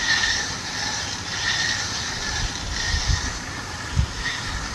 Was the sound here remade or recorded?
remade